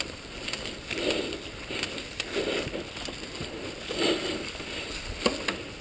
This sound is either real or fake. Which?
real